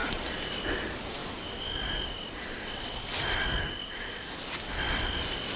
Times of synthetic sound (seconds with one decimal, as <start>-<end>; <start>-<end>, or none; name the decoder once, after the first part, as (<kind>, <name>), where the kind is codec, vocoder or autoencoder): none